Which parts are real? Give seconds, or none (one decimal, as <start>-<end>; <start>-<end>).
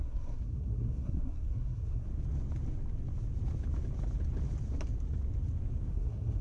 2.1-5.9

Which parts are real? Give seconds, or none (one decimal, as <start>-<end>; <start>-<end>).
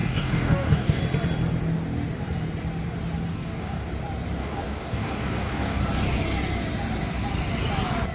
1.0-3.3; 3.9-4.4; 5.8-8.1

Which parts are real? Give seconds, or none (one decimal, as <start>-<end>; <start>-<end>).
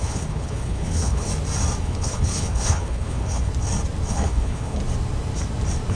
1.3-1.8; 3.5-4.1; 4.8-5.9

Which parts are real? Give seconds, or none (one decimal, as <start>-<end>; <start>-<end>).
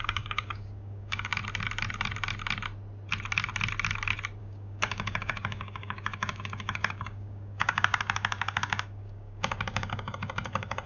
1.3-4.4